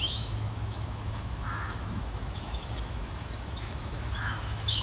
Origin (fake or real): fake